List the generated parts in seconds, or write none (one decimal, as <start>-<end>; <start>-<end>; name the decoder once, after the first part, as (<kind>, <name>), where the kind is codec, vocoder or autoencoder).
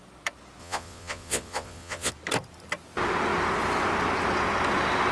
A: 0.6-2.1 (vocoder, Vocos)